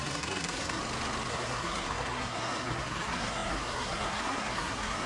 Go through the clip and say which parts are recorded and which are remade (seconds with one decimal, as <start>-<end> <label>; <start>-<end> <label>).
0.0-0.8 remade; 0.8-1.3 recorded; 1.3-5.1 remade